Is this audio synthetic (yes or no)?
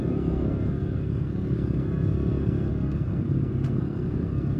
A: yes